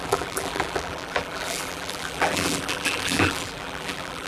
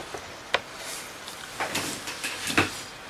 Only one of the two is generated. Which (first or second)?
first